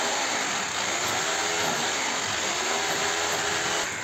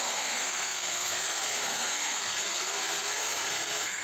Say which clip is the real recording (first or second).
first